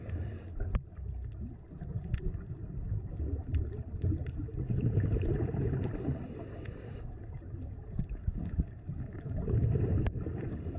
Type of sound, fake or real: fake